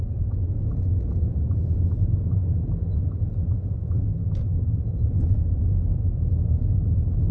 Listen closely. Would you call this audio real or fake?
fake